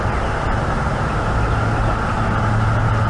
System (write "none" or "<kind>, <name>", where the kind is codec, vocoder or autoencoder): none